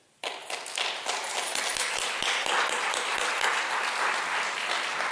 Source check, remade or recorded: recorded